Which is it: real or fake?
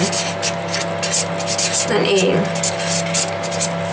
real